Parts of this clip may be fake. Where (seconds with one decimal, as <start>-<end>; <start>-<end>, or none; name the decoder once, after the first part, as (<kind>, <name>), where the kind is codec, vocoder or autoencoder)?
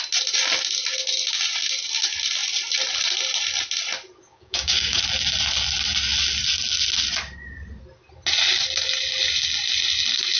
4.2-5.0 (codec, DAC)